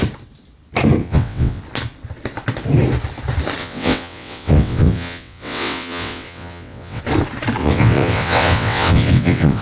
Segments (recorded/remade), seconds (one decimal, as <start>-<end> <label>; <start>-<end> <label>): 0.0-1.0 recorded; 1.0-1.6 remade; 1.6-3.6 recorded; 3.6-7.0 remade; 7.0-7.6 recorded; 7.6-9.6 remade